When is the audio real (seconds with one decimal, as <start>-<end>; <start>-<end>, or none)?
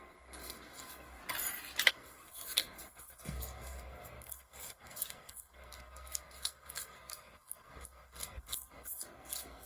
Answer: 1.2-1.9